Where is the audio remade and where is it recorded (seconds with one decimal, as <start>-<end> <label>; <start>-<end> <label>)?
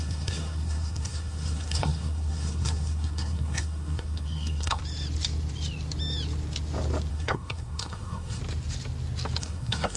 0.0-4.8 remade; 4.8-7.1 recorded; 7.1-8.4 remade; 8.4-9.4 recorded; 9.4-10.0 remade